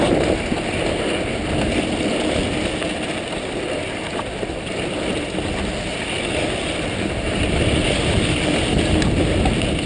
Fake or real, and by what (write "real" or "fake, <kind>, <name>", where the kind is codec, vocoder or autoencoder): real